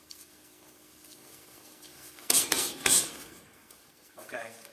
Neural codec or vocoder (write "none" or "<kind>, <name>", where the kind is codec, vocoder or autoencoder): codec, SNAC